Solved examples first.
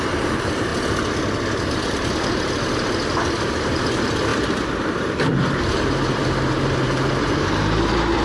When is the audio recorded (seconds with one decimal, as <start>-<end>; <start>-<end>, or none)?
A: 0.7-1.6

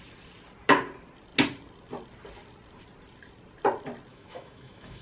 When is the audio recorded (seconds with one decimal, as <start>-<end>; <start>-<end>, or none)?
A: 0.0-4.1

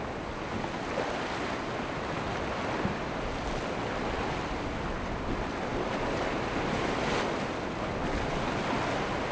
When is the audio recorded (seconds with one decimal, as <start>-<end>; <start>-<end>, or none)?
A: 0.0-9.3

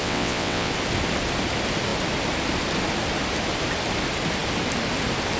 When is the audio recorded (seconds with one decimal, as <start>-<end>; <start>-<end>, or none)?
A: 0.7-5.4

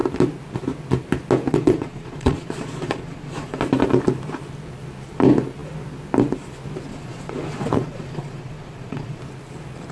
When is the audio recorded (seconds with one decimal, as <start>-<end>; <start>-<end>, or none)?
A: 0.0-1.5; 3.6-6.9; 9.2-9.9

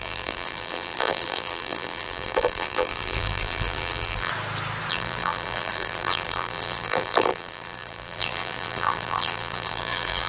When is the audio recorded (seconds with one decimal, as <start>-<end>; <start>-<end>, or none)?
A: 4.3-4.9

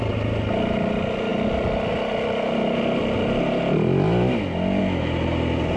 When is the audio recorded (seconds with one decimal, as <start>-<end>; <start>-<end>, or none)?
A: 0.0-5.8